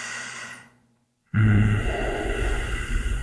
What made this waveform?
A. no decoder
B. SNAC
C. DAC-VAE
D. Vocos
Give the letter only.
D